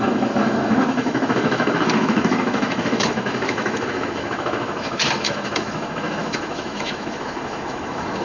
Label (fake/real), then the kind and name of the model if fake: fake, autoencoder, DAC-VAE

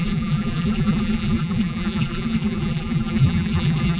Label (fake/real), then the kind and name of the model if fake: fake, vocoder, BigVGAN v2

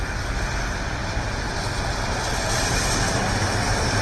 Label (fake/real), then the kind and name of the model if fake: real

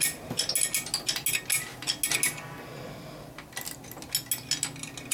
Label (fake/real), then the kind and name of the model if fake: real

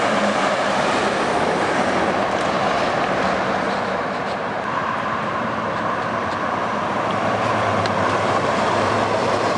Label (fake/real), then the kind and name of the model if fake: fake, vocoder, BigVGAN v2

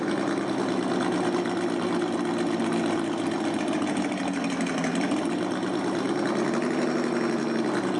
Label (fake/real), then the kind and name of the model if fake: real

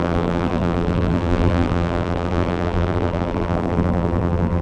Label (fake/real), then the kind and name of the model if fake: fake, vocoder, BigVGAN v2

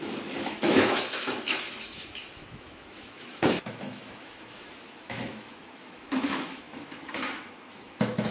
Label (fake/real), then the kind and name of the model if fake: fake, autoencoder, DAC-VAE